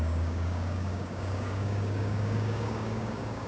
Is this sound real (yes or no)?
no